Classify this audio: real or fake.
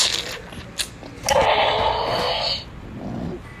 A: real